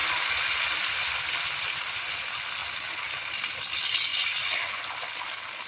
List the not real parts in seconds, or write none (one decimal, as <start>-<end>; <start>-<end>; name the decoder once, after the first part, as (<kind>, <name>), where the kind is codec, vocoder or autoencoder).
0.0-2.1 (vocoder, BigVGAN v2); 4.1-4.7